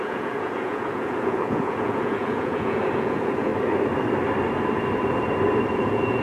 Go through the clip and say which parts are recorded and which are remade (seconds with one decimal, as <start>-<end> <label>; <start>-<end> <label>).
0.0-3.5 remade; 3.5-5.7 recorded; 5.7-6.2 remade